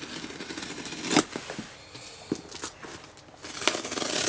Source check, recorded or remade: recorded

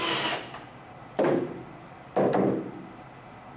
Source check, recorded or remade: recorded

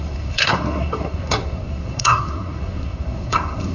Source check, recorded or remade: remade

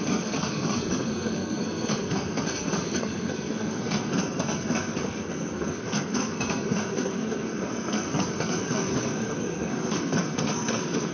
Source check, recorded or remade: remade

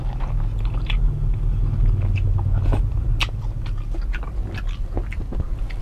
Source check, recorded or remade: recorded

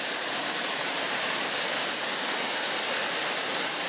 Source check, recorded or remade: recorded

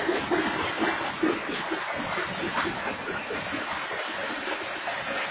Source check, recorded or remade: recorded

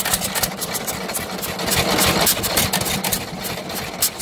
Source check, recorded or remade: recorded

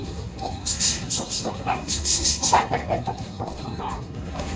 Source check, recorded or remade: remade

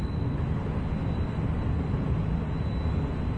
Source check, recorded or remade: recorded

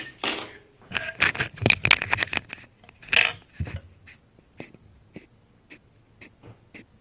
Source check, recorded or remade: recorded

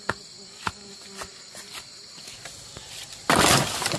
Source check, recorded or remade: recorded